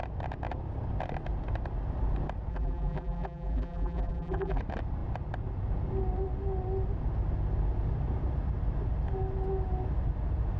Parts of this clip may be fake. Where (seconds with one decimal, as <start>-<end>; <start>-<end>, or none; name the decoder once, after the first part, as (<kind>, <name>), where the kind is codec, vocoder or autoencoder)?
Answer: 2.5-4.6 (vocoder, BigVGAN v2)